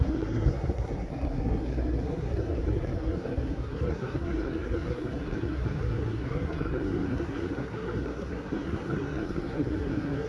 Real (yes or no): no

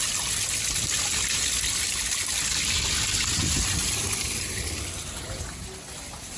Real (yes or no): yes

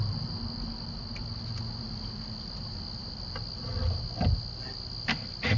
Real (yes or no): yes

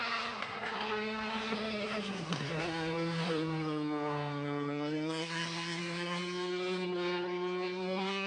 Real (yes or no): no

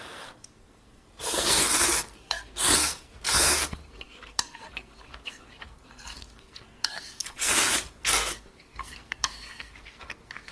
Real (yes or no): no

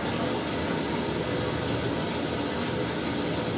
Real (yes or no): yes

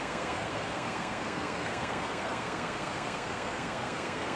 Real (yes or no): no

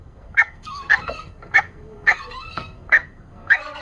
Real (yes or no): no